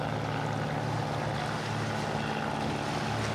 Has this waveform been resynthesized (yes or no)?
no